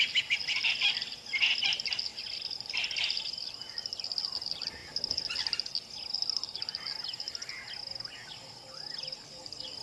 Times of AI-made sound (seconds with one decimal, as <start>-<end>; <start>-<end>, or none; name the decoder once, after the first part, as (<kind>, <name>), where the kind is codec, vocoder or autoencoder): 0.4-1.0 (vocoder, BigVGAN v2); 2.1-3.5